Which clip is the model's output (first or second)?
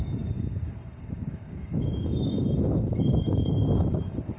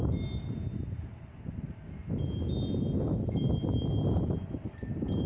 first